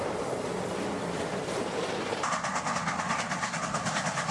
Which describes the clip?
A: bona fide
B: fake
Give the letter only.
A